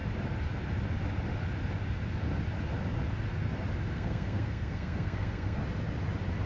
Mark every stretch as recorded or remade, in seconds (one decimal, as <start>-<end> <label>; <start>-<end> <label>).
0.0-3.9 recorded; 3.9-5.6 remade; 5.6-6.5 recorded